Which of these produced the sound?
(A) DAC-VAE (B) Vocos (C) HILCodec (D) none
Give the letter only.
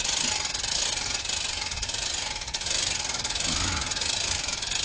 D